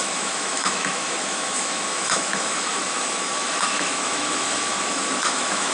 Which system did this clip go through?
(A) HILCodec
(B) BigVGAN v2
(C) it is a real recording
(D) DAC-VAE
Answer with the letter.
D